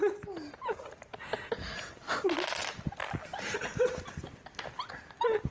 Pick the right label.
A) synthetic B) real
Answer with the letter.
B